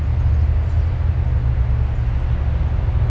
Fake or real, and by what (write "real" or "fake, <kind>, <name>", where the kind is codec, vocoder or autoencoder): real